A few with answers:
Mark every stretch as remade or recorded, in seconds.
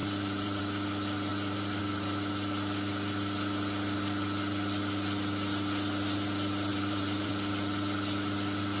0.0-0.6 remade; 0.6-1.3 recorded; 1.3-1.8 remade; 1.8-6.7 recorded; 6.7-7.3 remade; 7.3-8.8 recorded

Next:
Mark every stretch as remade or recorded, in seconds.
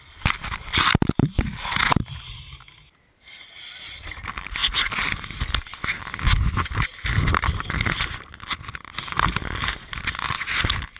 0.0-11.0 recorded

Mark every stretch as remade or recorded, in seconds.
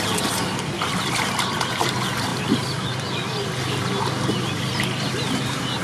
0.0-5.8 recorded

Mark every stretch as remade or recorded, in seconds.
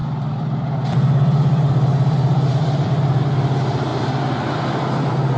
0.0-3.2 remade; 3.2-3.9 recorded; 3.9-5.4 remade